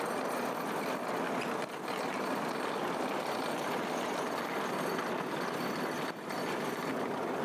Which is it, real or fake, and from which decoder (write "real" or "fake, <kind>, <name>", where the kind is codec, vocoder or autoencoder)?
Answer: real